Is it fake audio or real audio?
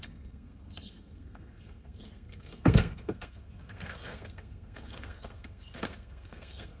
fake